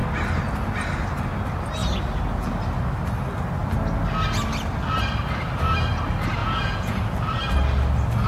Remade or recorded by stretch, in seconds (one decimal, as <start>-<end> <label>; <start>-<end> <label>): 0.0-6.4 recorded; 6.4-7.0 remade; 7.0-8.3 recorded